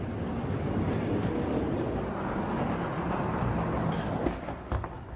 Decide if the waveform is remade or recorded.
recorded